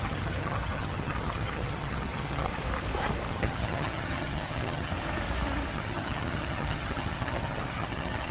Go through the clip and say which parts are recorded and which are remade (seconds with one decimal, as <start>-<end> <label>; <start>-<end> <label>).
0.0-2.5 remade; 2.5-3.3 recorded; 3.3-4.9 remade; 4.9-5.7 recorded; 5.7-8.3 remade